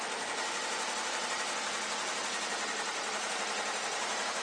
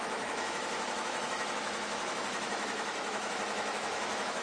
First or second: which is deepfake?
second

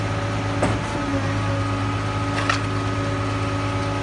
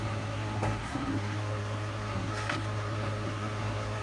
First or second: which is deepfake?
second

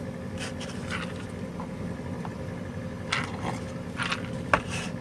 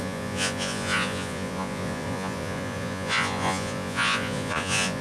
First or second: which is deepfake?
second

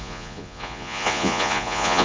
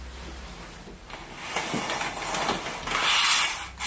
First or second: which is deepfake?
first